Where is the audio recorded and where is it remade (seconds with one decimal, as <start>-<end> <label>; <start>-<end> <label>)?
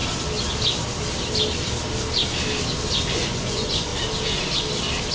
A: 0.0-3.1 recorded; 3.1-3.9 remade; 3.9-5.1 recorded